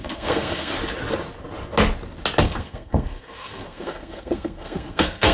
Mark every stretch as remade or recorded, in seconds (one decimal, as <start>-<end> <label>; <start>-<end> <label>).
0.0-0.7 remade; 0.7-2.4 recorded; 2.4-5.3 remade